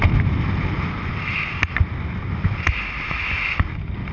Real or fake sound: real